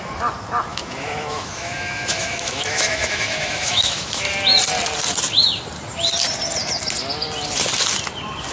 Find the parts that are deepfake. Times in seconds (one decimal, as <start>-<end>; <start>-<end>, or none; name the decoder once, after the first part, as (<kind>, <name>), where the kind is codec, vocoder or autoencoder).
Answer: 0.7-4.3 (autoencoder, DAC-VAE)